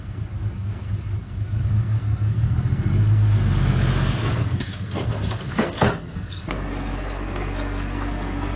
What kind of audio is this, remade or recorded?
remade